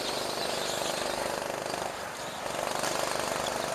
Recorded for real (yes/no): yes